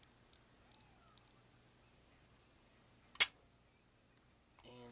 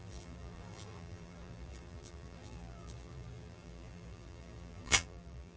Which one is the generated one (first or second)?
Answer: second